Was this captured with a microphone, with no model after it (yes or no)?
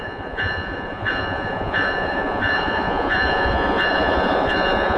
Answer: no